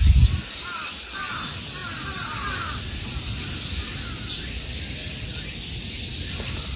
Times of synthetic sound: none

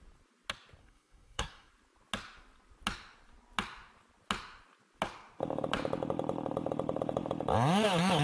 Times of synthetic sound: 0.8-1.7 (codec, SNAC)